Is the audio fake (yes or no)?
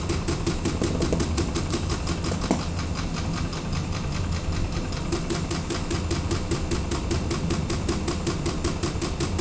no